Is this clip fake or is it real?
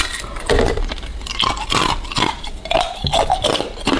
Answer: real